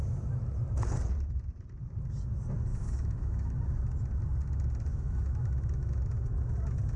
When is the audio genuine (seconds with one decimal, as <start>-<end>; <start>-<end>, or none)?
0.0-2.7; 3.6-4.9; 6.0-7.0